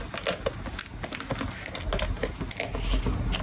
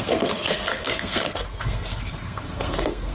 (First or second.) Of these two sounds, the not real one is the second